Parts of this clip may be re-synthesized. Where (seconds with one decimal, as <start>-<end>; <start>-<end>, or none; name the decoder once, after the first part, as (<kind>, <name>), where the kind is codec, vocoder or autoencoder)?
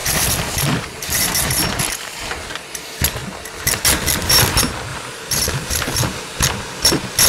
0.0-1.8 (vocoder, BigVGAN v2); 4.9-6.2